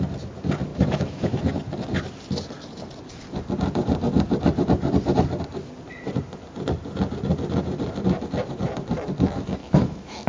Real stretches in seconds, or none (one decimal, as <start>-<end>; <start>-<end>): 0.0-0.7; 1.4-9.6